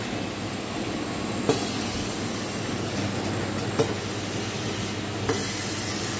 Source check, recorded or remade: recorded